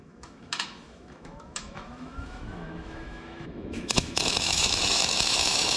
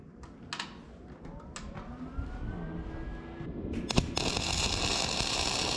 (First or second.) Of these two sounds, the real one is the second